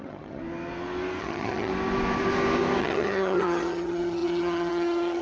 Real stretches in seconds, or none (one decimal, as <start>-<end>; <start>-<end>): 0.4-1.2; 1.7-2.8